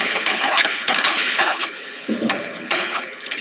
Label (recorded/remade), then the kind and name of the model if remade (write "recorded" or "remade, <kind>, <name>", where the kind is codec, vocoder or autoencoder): remade, codec, HILCodec